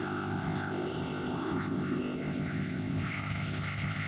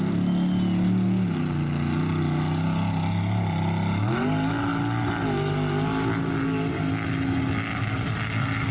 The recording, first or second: second